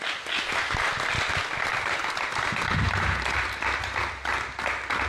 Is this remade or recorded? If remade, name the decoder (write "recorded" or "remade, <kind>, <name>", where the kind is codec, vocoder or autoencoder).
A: recorded